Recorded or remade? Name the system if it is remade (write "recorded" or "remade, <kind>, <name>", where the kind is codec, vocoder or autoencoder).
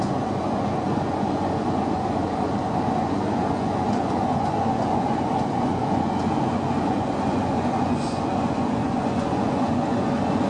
remade, vocoder, Vocos